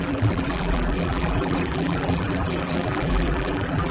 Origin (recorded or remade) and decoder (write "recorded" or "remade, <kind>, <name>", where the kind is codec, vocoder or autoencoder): remade, vocoder, BigVGAN v2